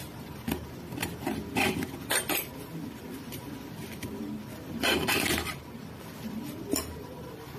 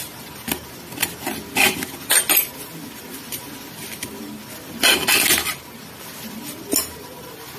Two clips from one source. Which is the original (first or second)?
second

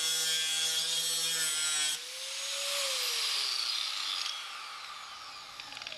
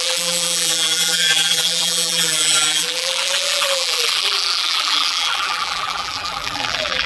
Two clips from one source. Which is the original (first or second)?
first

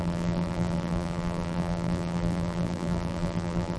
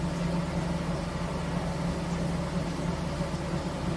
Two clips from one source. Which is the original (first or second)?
second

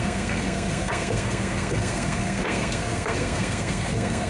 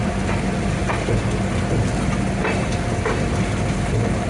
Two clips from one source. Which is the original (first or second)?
second